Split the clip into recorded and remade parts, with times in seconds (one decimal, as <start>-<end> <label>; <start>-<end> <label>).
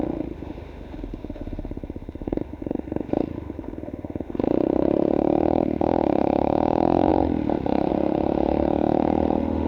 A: 0.0-9.7 remade